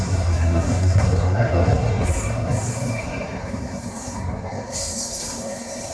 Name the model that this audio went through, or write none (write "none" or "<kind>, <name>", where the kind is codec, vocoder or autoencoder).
codec, SNAC